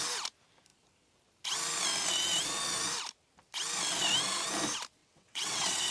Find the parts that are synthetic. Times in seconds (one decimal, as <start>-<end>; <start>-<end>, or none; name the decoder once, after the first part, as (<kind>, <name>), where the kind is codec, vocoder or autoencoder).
5.0-5.9 (vocoder, WaveNeXt)